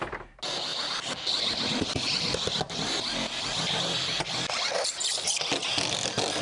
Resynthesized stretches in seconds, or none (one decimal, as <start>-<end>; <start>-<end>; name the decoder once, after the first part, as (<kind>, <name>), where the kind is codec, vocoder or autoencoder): none